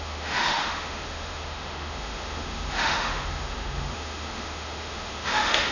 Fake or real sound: fake